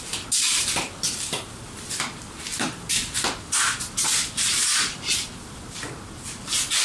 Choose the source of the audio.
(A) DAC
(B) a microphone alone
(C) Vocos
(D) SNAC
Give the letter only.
B